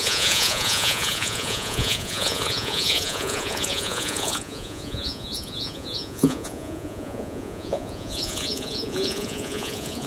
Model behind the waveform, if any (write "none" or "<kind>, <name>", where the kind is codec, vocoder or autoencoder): vocoder, Vocos